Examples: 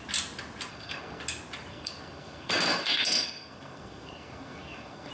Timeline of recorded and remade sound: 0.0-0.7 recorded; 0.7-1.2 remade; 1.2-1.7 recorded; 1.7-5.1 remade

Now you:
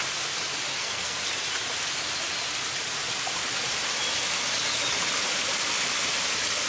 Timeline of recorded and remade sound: 0.0-0.7 recorded; 0.7-1.2 remade; 1.2-6.7 recorded

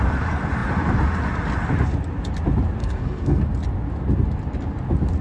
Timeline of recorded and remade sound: 0.0-2.8 recorded; 2.8-3.4 remade; 3.4-5.2 recorded

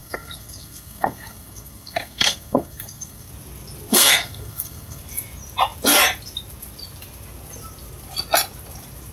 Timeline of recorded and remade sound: 0.0-3.3 remade; 3.3-3.9 recorded; 3.9-5.0 remade; 5.0-9.1 recorded

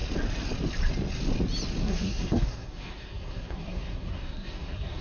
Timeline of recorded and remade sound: 0.0-1.8 recorded; 1.8-5.0 remade

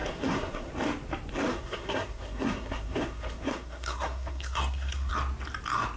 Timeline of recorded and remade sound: 0.0-0.7 remade; 0.7-1.5 recorded; 1.5-5.1 remade; 5.1-6.0 recorded